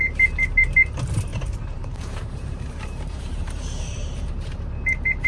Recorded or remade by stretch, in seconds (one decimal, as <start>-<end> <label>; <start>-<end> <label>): 0.0-1.3 recorded; 1.3-4.5 remade; 4.5-5.3 recorded